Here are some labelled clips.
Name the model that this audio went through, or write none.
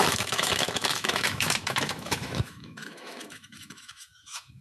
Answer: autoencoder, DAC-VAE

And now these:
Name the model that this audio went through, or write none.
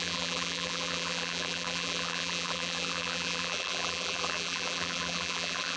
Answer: vocoder, BigVGAN v2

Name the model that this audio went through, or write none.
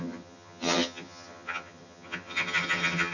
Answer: vocoder, HiFi-GAN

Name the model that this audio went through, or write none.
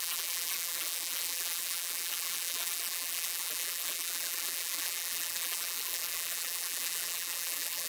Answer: vocoder, BigVGAN v2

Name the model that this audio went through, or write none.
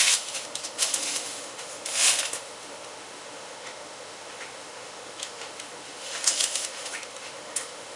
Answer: autoencoder, DAC-VAE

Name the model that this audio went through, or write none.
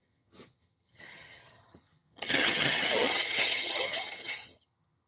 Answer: vocoder, HiFi-GAN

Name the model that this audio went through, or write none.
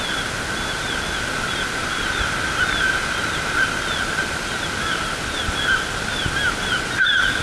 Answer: none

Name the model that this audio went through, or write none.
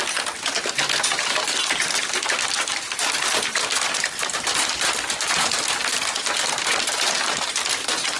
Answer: none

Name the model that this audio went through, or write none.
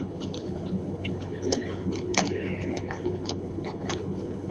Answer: codec, HILCodec